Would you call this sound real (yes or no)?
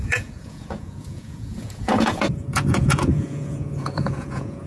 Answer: no